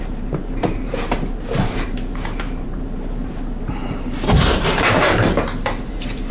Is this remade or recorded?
remade